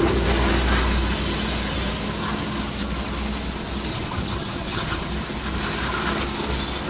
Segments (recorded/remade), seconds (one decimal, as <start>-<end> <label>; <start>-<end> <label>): 0.0-3.9 recorded; 3.9-5.1 remade; 5.1-6.9 recorded